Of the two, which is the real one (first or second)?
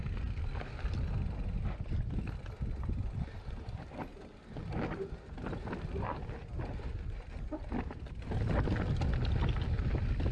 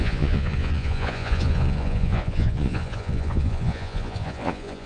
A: first